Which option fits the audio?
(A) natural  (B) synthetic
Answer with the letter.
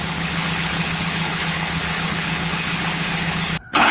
B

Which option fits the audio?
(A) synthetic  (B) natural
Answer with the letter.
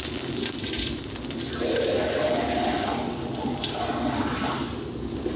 B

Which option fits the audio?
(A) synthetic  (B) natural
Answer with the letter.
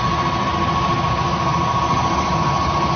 B